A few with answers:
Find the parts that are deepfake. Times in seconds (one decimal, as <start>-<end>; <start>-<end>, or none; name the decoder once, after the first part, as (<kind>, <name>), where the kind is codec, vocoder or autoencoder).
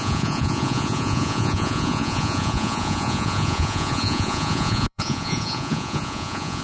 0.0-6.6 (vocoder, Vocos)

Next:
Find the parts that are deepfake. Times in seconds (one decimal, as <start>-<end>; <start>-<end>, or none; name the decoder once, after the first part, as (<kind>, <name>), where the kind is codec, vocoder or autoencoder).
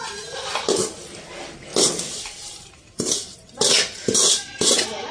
none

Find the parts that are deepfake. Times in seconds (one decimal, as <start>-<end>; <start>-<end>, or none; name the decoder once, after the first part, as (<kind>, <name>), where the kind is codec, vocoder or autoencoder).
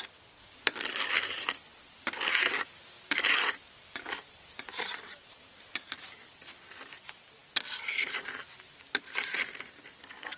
none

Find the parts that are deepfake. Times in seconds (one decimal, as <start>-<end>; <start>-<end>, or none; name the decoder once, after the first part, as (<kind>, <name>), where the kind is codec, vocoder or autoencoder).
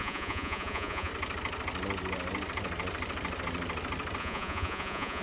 0.0-1.1 (vocoder, Vocos); 4.2-5.2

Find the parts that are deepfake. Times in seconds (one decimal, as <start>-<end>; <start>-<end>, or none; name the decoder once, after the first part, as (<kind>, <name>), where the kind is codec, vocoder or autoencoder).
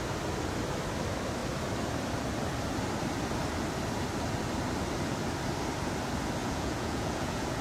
6.4-7.6 (vocoder, Vocos)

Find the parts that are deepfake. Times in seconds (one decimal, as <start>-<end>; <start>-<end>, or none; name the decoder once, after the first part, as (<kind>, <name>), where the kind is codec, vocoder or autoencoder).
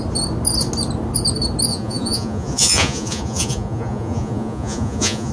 1.7-5.3 (vocoder, Vocos)